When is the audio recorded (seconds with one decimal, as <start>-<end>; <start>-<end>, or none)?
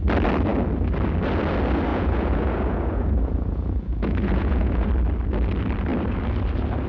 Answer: 0.0-1.9; 4.9-6.9